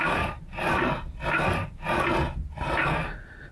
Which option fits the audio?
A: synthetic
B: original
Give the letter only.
B